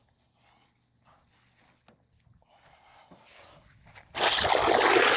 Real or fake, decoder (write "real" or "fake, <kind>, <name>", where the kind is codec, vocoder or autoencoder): real